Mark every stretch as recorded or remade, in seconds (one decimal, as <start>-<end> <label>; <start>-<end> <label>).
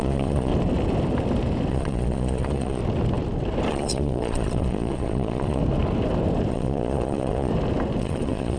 0.0-0.5 remade; 0.5-1.7 recorded; 1.7-2.8 remade; 2.8-3.7 recorded; 3.7-5.6 remade; 5.6-6.5 recorded; 6.5-7.5 remade; 7.5-8.0 recorded; 8.0-8.6 remade